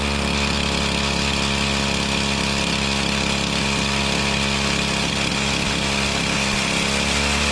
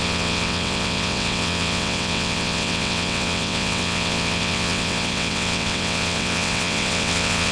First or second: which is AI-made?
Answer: second